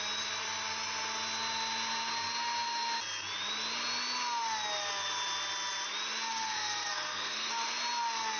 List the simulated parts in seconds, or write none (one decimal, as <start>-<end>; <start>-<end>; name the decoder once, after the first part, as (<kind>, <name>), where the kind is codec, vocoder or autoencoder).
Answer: 6.3-7.5 (codec, SNAC)